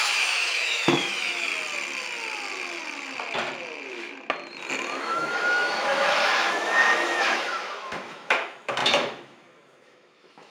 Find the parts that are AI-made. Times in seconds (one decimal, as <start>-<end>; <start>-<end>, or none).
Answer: 0.0-1.5; 5.0-10.5